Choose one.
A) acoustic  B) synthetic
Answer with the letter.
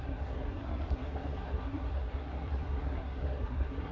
B